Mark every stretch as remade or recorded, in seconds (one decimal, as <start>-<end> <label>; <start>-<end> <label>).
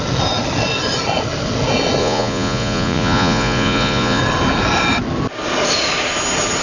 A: 0.0-2.0 recorded; 2.0-4.2 remade; 4.2-6.6 recorded